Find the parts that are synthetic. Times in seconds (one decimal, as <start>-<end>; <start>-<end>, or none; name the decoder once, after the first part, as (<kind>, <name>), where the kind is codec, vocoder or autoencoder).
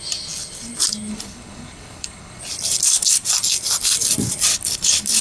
1.1-2.4 (codec, HILCodec); 2.8-3.3; 4.5-5.2